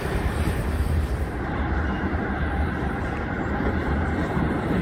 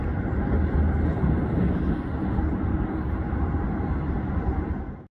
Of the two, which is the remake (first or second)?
first